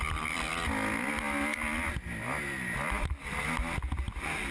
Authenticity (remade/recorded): recorded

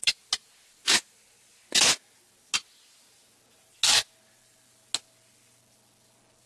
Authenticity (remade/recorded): recorded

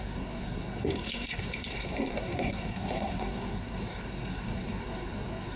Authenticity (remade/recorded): remade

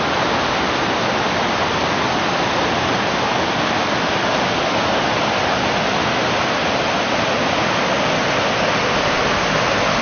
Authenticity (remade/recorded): recorded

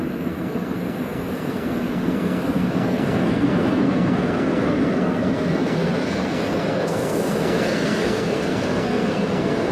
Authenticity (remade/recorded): remade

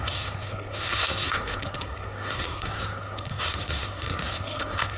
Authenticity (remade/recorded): remade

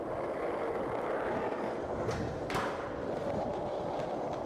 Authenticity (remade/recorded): recorded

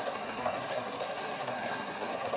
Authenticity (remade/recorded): remade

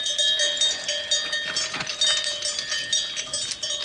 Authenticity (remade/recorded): recorded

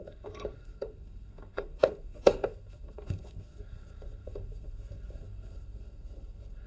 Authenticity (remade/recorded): remade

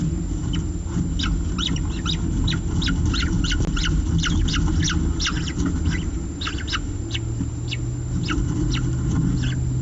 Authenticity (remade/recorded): recorded